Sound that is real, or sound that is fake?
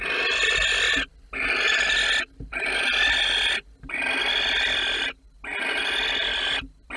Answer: real